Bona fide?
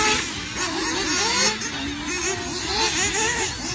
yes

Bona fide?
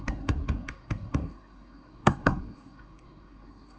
no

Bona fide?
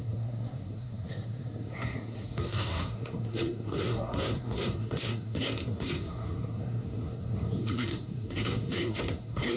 no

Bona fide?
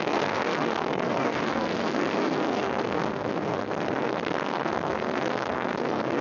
no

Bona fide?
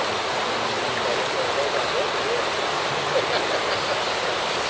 yes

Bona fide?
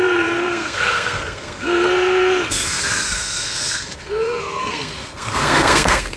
no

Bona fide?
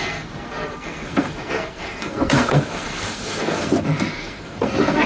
no